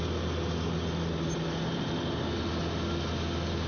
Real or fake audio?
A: real